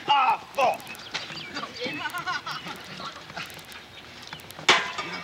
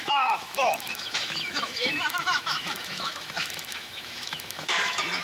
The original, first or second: first